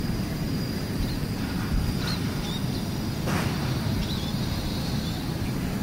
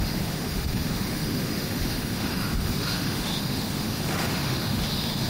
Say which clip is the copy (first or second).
second